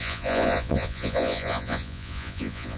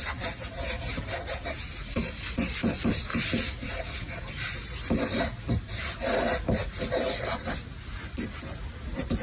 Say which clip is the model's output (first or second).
first